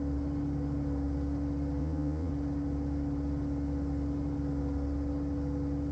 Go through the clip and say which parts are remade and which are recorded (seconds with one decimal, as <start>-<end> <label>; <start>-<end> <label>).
0.0-1.8 recorded; 1.8-2.3 remade; 2.3-5.9 recorded